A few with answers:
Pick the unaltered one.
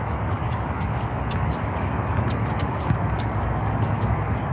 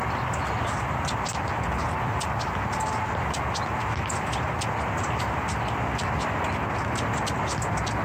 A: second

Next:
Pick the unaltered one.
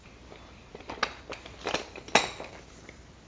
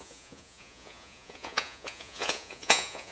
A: first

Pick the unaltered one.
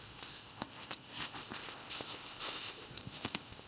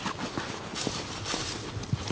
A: second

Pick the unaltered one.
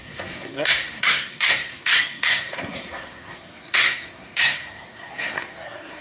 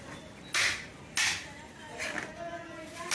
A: second